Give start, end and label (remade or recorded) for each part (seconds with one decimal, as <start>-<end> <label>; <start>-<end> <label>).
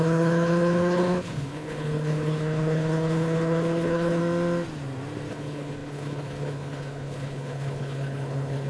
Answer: 0.0-4.2 remade; 4.2-5.3 recorded; 5.3-8.7 remade